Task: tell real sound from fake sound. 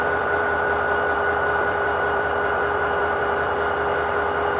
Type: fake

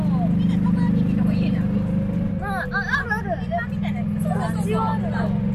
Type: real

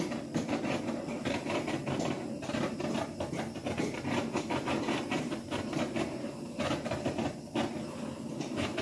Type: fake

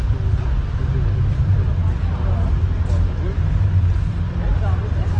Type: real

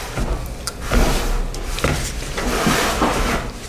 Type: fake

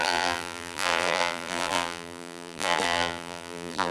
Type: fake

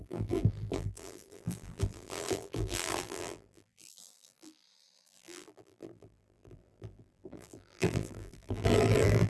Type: fake